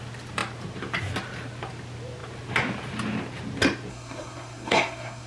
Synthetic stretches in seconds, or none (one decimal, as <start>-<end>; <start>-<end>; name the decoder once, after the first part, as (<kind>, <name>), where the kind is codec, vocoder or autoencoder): 3.9-5.3 (codec, SNAC)